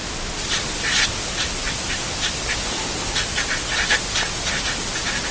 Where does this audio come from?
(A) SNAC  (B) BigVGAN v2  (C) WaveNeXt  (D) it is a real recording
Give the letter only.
D